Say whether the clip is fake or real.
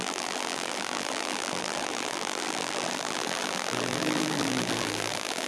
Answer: fake